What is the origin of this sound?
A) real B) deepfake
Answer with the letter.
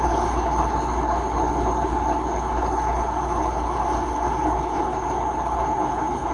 B